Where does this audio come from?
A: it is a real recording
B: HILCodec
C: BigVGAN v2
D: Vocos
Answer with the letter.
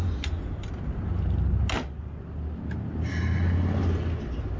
A